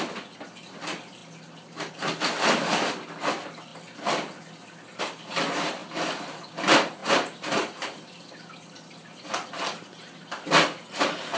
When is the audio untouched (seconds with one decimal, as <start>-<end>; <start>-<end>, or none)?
0.0-5.8; 6.5-7.0; 8.4-11.4